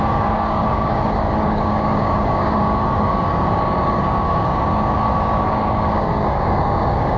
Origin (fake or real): fake